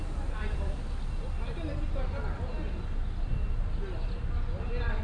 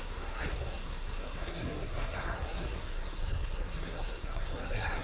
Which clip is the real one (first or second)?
first